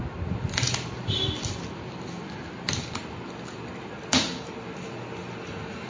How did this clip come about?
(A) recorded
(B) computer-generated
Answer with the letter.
A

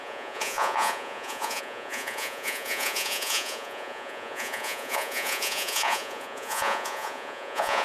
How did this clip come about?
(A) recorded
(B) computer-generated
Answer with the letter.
B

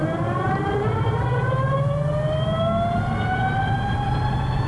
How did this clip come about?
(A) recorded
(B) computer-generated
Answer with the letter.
A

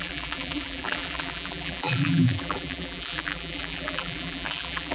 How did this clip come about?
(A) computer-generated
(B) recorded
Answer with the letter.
A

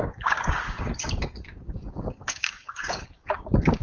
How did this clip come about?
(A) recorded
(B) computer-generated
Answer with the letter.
B